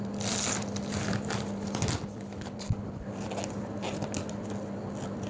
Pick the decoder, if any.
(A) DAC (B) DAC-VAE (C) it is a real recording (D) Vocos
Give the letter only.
C